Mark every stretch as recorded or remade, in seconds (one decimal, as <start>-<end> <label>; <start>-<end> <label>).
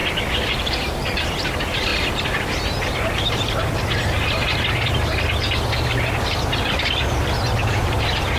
0.0-8.4 recorded